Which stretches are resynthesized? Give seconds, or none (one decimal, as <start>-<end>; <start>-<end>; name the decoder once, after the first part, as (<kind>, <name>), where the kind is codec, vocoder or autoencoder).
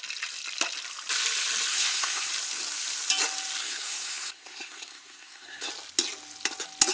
1.7-2.3 (codec, SNAC); 3.6-5.7